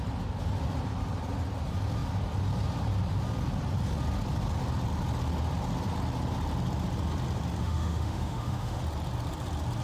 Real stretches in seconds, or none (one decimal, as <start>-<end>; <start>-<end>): 0.0-7.6; 8.8-9.8